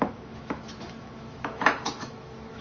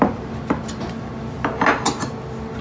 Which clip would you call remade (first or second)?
first